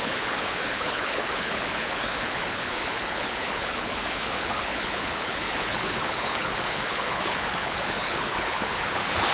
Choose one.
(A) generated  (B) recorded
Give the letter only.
A